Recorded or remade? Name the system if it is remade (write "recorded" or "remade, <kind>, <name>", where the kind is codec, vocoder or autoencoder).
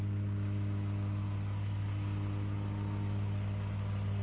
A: recorded